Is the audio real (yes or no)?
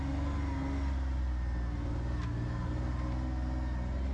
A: yes